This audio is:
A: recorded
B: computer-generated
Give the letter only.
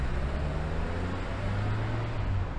A